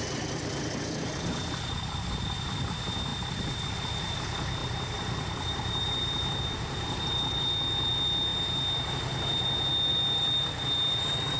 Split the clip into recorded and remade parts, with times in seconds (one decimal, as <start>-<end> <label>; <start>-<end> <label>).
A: 0.0-4.6 recorded; 4.6-7.0 remade; 7.0-9.9 recorded; 9.9-10.5 remade; 10.5-11.4 recorded